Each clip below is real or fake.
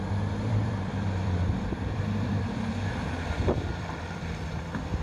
fake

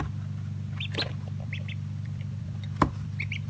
fake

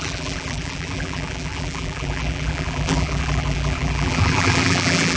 fake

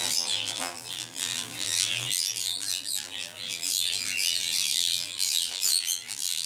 fake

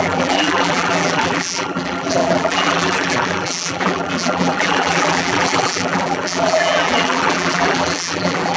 fake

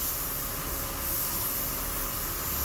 real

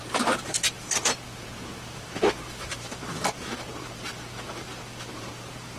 fake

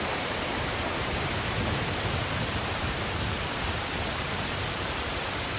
fake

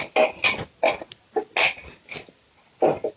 real